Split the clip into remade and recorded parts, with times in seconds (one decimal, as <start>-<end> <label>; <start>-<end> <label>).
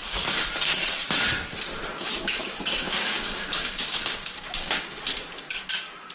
0.0-1.9 recorded; 1.9-5.0 remade; 5.0-6.1 recorded